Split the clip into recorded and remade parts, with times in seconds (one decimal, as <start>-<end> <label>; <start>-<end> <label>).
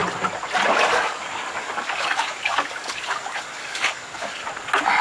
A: 0.0-0.9 recorded; 0.9-4.4 remade; 4.4-5.0 recorded